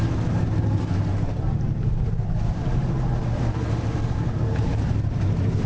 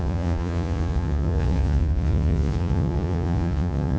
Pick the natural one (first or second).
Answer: first